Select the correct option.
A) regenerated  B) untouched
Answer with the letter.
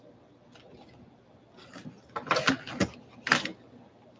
B